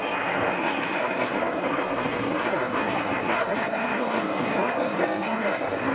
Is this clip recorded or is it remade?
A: remade